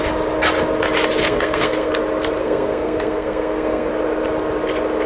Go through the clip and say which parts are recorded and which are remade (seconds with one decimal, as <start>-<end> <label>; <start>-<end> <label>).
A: 0.0-1.2 recorded; 1.2-1.9 remade; 1.9-2.4 recorded; 2.4-3.9 remade; 3.9-5.1 recorded